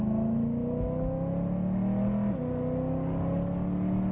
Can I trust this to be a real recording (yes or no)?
yes